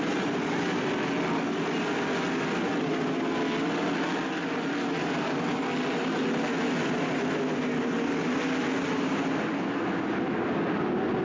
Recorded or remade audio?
recorded